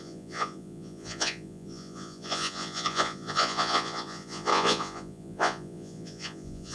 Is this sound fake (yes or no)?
yes